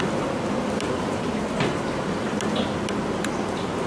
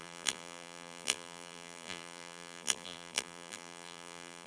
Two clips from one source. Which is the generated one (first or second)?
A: second